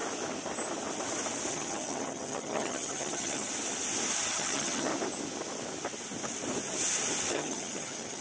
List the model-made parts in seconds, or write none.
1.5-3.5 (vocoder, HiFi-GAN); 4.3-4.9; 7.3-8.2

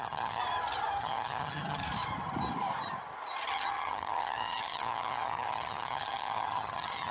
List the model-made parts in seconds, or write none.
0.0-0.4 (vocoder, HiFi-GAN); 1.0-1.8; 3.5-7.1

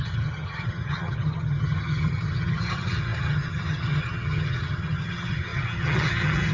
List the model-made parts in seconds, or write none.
0.0-6.5 (vocoder, HiFi-GAN)